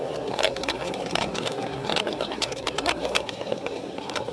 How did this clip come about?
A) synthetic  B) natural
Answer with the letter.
A